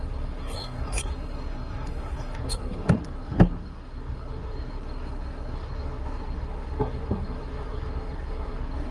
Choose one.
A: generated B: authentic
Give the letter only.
A